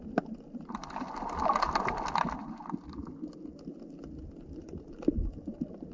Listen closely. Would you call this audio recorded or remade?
recorded